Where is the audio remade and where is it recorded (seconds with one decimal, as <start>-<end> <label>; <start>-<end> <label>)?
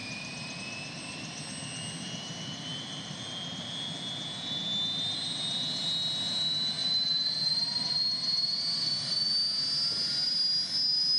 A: 0.0-0.6 remade; 0.6-6.8 recorded; 6.8-8.6 remade; 8.6-11.2 recorded